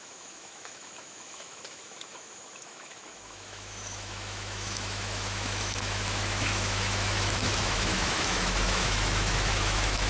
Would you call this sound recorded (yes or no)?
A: no